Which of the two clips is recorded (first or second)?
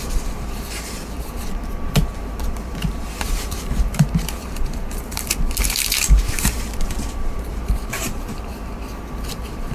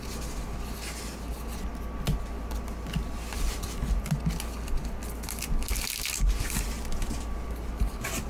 second